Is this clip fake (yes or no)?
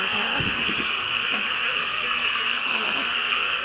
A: yes